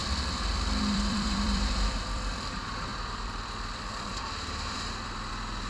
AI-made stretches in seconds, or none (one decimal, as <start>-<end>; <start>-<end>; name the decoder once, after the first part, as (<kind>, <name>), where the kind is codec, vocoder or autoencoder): 0.0-2.5 (vocoder, BigVGAN v2); 2.9-5.3